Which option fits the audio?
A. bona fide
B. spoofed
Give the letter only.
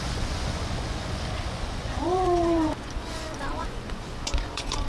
B